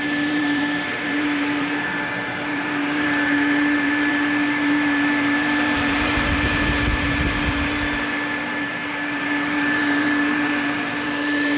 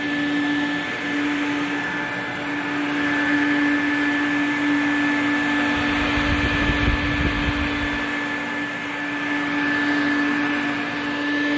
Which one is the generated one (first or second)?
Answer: first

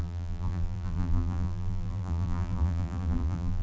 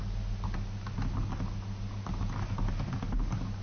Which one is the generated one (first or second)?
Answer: first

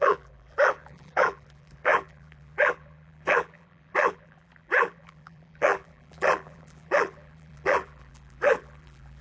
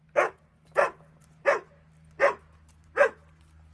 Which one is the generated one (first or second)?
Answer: first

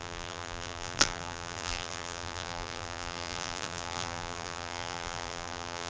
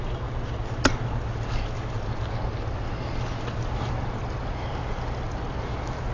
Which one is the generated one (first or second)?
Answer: first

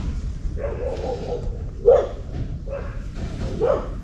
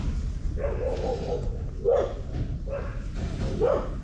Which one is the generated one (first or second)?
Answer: first